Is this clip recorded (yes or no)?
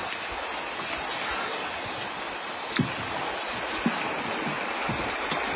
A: yes